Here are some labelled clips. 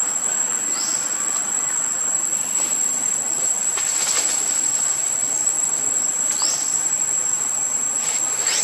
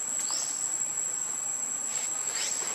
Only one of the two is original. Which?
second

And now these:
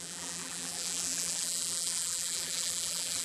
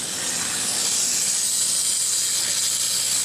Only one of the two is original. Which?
second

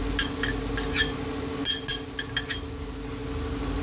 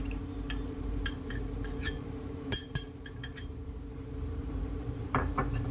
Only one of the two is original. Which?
first